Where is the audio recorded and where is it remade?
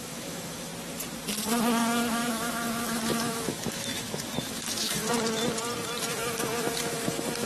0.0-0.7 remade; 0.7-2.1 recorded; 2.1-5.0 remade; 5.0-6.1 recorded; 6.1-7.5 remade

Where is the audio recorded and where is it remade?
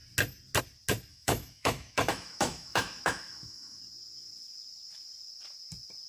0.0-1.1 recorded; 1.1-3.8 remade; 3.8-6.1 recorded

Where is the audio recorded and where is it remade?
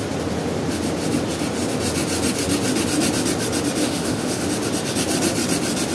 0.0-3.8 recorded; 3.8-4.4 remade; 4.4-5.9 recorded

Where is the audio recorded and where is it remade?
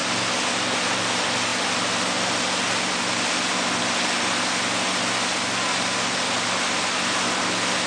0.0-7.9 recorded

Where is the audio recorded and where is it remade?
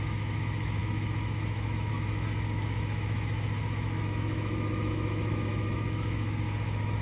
0.0-7.0 remade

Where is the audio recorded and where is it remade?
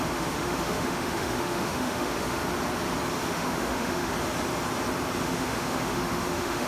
0.0-2.4 remade; 2.4-3.2 recorded; 3.2-4.1 remade; 4.1-5.2 recorded; 5.2-6.7 remade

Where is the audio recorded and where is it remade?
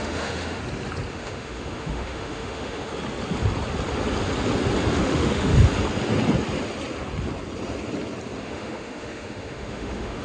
0.0-0.6 remade; 0.6-1.1 recorded; 1.1-2.9 remade; 2.9-4.9 recorded; 4.9-5.5 remade; 5.5-8.4 recorded; 8.4-10.2 remade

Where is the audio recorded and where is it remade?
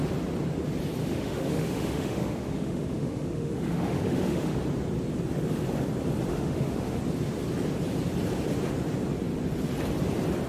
0.0-1.0 recorded; 1.0-4.6 remade; 4.6-6.3 recorded; 6.3-7.0 remade; 7.0-10.5 recorded